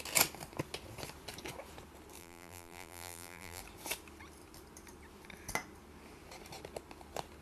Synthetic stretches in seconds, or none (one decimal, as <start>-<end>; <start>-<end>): 2.2-3.6